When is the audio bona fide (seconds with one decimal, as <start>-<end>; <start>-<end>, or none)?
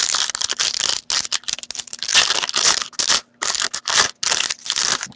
0.0-5.2